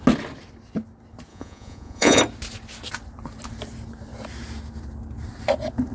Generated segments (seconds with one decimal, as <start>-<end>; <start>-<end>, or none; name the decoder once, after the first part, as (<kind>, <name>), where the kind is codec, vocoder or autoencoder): 1.3-2.2 (vocoder, Vocos)